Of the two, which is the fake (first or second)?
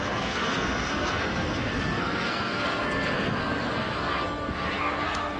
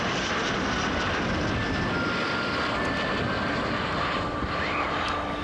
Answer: first